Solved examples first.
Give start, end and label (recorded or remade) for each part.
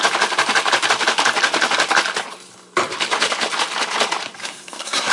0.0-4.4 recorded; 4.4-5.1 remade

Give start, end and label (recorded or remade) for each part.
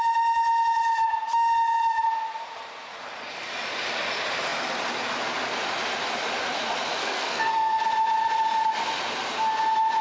0.0-7.0 recorded; 7.0-7.8 remade; 7.8-10.0 recorded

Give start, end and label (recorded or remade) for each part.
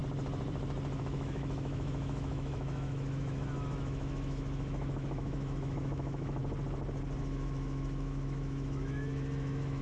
0.0-1.0 recorded; 1.0-6.4 remade; 6.4-7.2 recorded; 7.2-9.8 remade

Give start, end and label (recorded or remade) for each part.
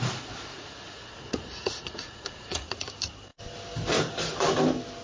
0.0-0.5 recorded; 0.5-2.9 remade; 2.9-5.0 recorded